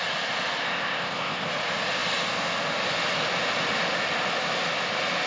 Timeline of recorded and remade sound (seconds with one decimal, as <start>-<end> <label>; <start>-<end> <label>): 0.0-0.6 recorded; 0.6-1.5 remade; 1.5-5.3 recorded